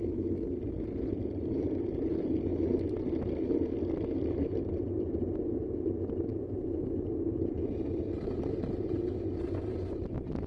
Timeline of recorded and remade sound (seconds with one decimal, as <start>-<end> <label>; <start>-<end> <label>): 0.0-6.3 recorded; 6.3-7.0 remade; 7.0-10.5 recorded